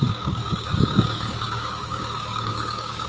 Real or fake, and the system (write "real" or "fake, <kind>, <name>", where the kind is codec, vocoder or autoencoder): fake, codec, DAC